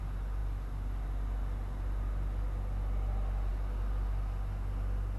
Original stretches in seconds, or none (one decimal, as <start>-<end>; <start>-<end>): 0.0-5.2